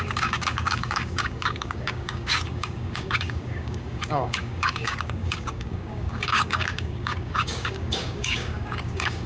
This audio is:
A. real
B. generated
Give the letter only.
B